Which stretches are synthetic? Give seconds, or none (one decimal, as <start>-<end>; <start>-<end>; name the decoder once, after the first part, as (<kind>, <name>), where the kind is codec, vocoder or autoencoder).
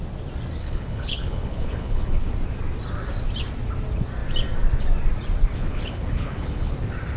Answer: 0.6-2.3 (codec, HILCodec); 5.5-6.7